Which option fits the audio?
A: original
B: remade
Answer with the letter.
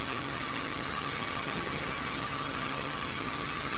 B